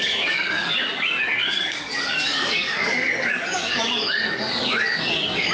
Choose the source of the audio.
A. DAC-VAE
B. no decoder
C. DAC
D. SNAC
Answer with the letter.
C